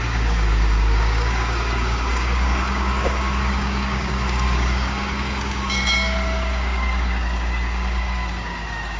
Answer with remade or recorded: remade